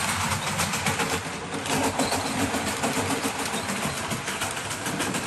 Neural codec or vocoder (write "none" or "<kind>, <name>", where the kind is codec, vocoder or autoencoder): vocoder, BigVGAN v2